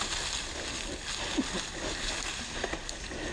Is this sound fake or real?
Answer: real